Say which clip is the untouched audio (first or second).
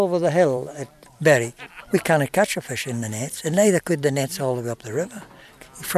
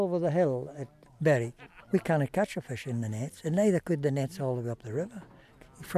second